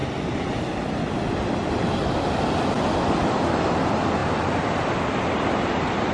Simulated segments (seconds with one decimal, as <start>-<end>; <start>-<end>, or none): none